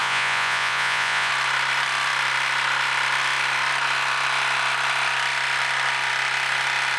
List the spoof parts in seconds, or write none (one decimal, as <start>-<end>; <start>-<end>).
0.0-1.3